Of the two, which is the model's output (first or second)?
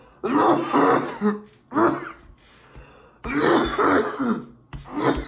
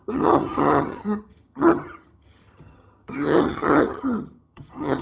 second